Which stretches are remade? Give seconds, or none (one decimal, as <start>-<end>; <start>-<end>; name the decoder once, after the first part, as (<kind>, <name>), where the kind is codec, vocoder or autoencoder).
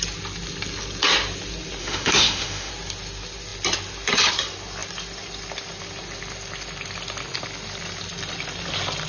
1.8-2.7 (autoencoder, DAC-VAE)